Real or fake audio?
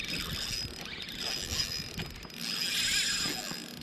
real